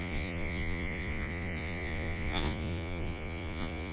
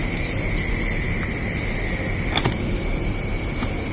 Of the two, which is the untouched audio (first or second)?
second